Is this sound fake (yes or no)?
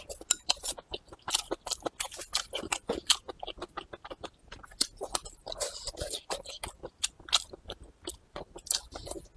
no